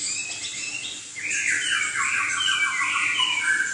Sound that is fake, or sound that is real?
real